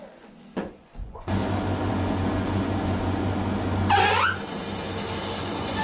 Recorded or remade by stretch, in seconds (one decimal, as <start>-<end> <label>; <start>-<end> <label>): 0.0-1.4 remade; 1.4-1.9 recorded; 1.9-3.2 remade; 3.2-5.3 recorded; 5.3-5.8 remade